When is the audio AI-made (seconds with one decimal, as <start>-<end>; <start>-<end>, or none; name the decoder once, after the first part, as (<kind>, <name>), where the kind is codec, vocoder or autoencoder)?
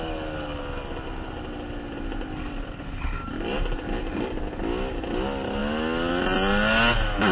none